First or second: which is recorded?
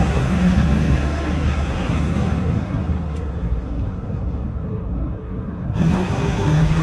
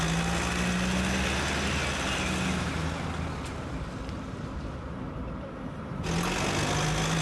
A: second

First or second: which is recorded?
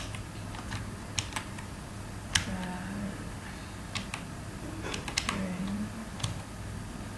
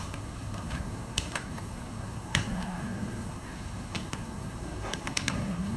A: first